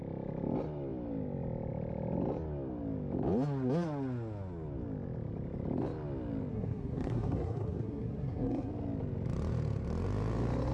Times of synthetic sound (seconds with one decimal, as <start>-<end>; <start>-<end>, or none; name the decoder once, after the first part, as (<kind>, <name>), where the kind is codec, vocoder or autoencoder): 6.5-8.7 (codec, SNAC)